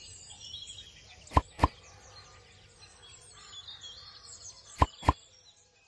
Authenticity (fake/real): real